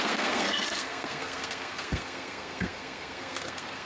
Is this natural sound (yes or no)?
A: no